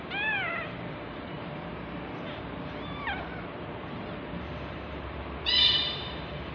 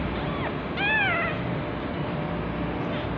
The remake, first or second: first